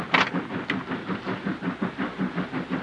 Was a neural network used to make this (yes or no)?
no